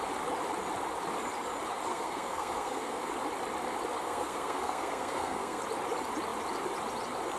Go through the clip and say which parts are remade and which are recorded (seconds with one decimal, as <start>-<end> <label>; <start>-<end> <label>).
0.0-1.9 recorded; 1.9-3.1 remade; 3.1-4.0 recorded; 4.0-5.6 remade; 5.6-7.4 recorded